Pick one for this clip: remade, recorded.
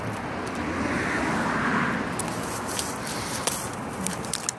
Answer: recorded